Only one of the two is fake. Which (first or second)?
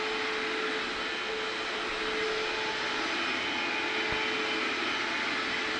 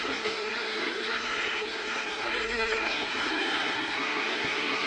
second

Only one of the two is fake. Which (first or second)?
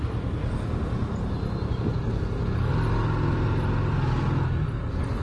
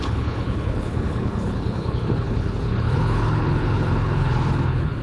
second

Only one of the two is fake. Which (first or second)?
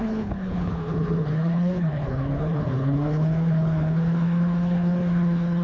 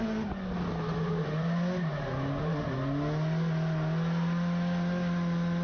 first